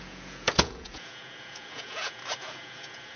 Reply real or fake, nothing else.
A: fake